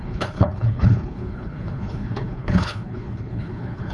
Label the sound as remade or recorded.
remade